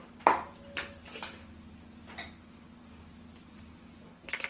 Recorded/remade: recorded